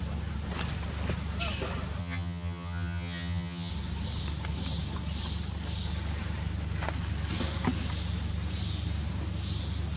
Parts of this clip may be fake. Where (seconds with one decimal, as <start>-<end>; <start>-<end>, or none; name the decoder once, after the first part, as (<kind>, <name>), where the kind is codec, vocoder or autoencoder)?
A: 2.0-3.7 (vocoder, HiFi-GAN)